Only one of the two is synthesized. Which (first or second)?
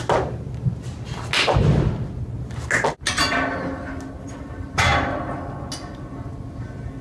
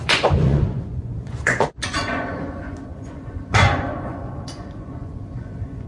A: second